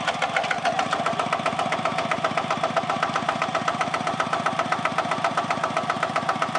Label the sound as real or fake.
real